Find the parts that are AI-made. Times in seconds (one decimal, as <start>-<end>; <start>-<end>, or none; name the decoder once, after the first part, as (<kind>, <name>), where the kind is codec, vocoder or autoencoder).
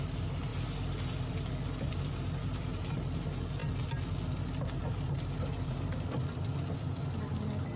none